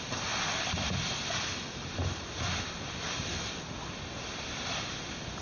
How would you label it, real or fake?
real